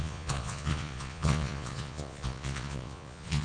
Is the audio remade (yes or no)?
yes